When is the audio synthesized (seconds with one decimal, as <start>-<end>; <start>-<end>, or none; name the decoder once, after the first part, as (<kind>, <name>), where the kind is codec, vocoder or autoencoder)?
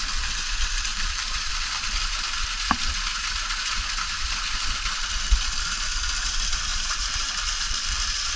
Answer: 0.9-1.5 (vocoder, BigVGAN v2); 6.7-8.0